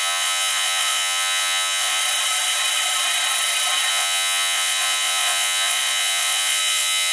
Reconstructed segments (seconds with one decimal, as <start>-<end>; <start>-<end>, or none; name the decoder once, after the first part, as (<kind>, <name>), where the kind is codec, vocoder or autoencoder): 0.0-2.0 (vocoder, Vocos); 3.9-7.1